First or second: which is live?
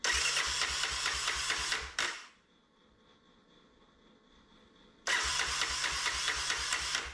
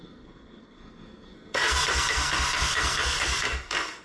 first